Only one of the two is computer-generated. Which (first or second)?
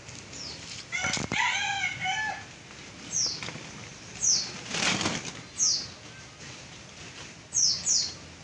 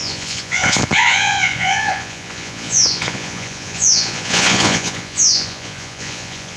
second